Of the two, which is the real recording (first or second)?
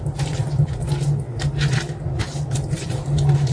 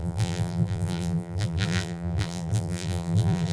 first